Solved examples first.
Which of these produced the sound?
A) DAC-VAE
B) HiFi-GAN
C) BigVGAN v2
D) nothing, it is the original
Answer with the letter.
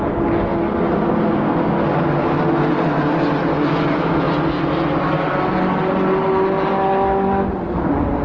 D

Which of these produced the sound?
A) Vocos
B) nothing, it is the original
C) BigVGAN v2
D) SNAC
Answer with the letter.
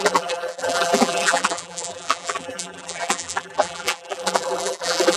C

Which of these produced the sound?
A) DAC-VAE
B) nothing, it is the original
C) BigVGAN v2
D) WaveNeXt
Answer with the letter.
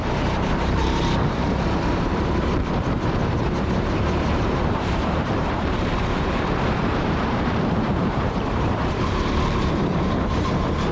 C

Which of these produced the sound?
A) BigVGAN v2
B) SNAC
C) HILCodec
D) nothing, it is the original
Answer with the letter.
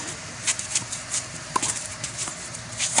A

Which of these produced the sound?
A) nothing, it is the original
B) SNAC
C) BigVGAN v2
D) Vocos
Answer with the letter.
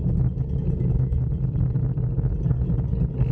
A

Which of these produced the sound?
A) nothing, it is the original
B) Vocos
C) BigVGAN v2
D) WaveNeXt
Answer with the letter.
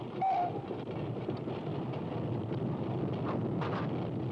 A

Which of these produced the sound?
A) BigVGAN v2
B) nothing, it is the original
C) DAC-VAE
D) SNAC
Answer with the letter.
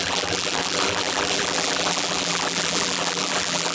A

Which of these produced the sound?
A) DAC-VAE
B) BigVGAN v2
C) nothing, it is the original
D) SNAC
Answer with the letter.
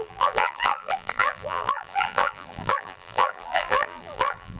B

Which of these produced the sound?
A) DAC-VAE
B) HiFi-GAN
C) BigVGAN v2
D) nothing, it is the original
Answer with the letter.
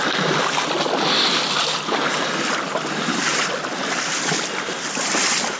D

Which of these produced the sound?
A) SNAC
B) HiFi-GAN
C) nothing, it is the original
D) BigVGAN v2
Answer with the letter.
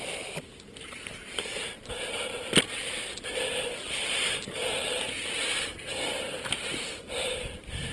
D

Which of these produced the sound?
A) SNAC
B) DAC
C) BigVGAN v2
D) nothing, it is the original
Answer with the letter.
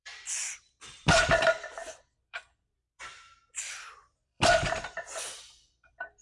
C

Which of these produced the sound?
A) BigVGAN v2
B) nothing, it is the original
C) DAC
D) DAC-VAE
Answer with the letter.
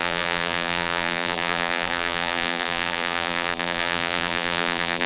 A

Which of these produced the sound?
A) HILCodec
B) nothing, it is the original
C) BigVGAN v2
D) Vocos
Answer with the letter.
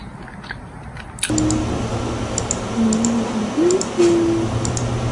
B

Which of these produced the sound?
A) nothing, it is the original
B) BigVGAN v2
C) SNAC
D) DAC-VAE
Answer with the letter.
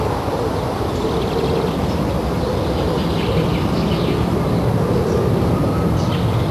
A